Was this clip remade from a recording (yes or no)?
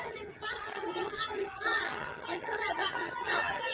yes